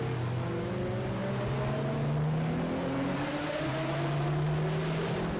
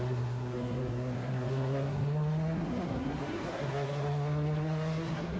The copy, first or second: second